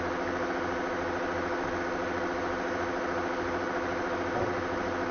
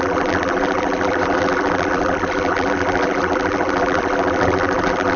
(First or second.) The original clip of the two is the first